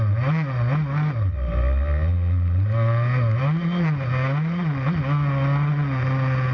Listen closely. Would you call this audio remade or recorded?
recorded